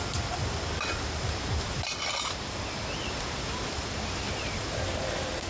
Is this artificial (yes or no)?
no